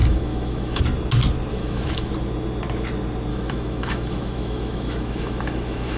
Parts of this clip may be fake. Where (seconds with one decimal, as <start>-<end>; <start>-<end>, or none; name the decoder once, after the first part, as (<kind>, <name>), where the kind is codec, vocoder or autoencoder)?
0.0-0.8 (autoencoder, DAC-VAE); 1.5-2.1; 3.3-6.0